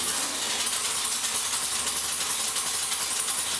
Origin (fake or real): real